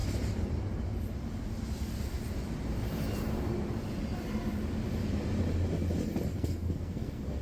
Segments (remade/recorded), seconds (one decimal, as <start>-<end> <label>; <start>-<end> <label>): 0.0-6.3 recorded; 6.3-7.4 remade